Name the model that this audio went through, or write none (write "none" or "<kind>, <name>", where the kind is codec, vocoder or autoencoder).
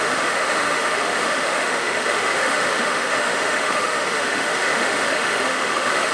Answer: autoencoder, DAC-VAE